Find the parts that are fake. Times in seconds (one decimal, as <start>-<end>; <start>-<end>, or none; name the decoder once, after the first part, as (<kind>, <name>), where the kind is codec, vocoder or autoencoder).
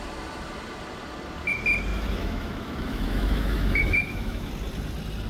1.9-4.5 (autoencoder, DAC-VAE)